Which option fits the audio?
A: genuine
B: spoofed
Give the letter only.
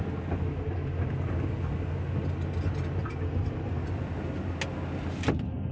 A